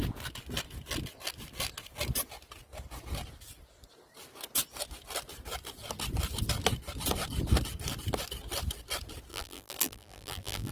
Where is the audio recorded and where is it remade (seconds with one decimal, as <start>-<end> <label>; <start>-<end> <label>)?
0.0-9.3 recorded; 9.3-10.7 remade